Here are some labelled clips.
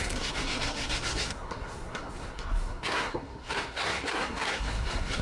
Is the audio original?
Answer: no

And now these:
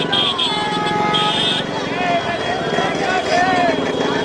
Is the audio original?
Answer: yes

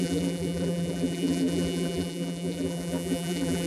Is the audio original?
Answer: no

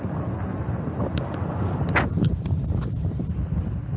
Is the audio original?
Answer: yes